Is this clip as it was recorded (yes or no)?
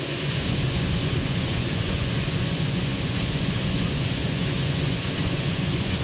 no